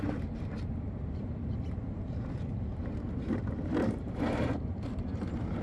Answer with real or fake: fake